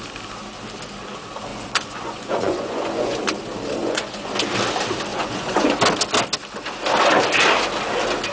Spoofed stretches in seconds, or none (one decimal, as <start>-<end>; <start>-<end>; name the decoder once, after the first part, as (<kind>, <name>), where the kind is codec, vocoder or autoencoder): 1.5-3.2 (vocoder, Vocos); 3.8-4.3; 5.1-5.7